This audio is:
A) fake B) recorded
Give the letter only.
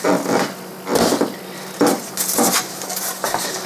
B